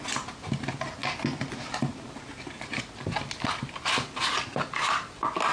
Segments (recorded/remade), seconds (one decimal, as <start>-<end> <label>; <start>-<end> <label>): 0.0-2.3 recorded; 2.3-2.8 remade; 2.8-5.5 recorded